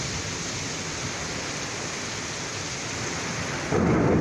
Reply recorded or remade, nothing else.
recorded